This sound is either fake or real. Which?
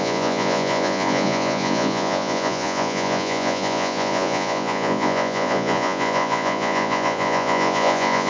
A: fake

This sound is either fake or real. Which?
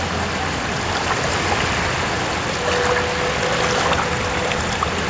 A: real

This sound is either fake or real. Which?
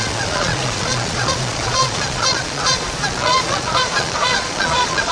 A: fake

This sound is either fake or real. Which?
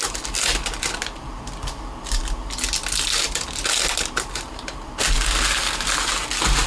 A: real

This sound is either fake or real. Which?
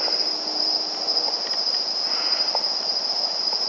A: real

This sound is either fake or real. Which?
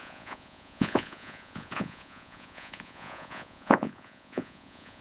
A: fake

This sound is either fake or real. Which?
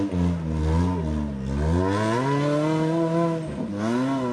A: real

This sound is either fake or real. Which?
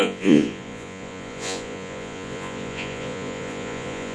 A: fake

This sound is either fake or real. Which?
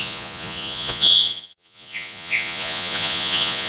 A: fake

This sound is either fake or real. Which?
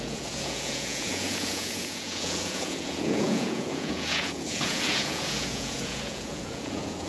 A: fake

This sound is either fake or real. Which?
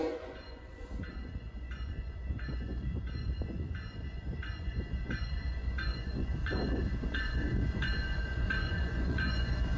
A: fake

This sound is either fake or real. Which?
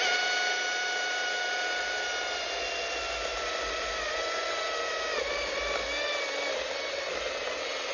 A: real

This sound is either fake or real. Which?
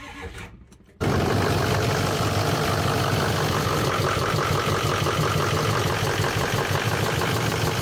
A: real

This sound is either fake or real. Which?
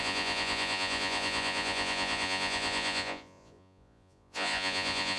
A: fake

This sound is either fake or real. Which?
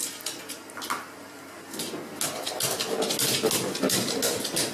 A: real